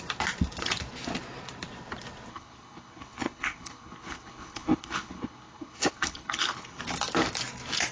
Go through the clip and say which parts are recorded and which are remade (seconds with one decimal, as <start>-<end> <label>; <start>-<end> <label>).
0.0-2.3 recorded; 2.3-6.8 remade; 6.8-7.9 recorded